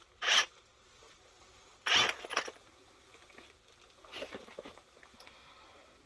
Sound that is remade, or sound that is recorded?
recorded